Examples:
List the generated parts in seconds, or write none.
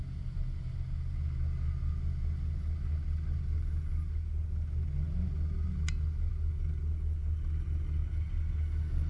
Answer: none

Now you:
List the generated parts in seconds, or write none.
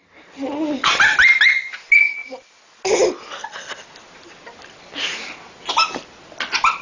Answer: none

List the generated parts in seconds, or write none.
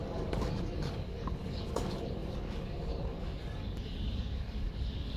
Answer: 0.0-5.2 (codec, DAC)